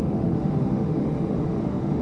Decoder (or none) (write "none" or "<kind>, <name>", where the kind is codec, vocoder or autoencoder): autoencoder, DAC-VAE